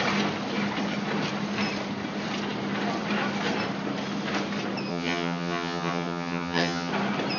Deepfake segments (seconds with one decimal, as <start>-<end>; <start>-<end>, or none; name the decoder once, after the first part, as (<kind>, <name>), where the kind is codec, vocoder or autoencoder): 4.9-6.9 (vocoder, HiFi-GAN)